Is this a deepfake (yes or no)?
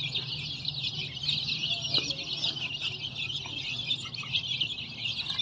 no